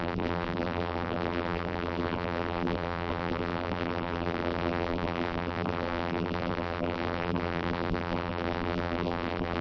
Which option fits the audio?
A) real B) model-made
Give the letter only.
B